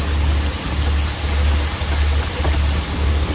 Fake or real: real